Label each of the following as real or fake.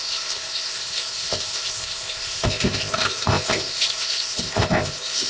fake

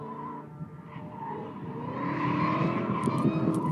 real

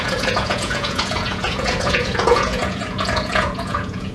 fake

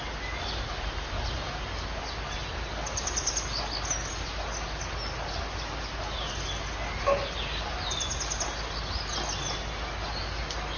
real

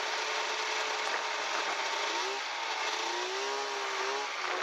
real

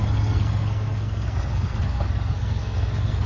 fake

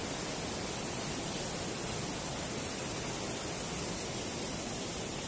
real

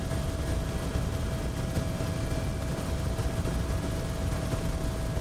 real